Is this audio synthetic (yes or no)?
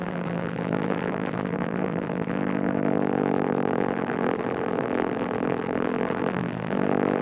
yes